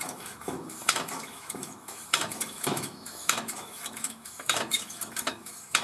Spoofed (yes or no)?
yes